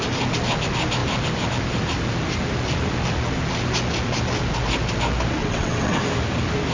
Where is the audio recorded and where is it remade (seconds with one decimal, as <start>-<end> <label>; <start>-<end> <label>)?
0.0-5.4 recorded; 5.4-6.0 remade; 6.0-6.7 recorded